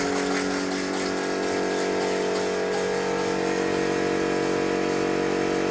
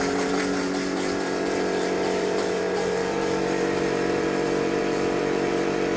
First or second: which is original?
first